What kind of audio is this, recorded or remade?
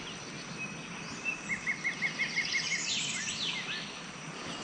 recorded